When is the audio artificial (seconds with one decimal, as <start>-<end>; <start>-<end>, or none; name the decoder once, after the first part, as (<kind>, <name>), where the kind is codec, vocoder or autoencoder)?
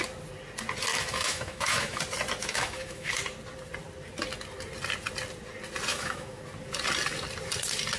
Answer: 0.9-2.0 (autoencoder, DAC-VAE); 2.4-3.1; 5.9-6.4